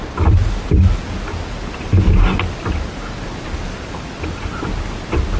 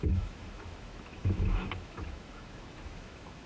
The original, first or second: first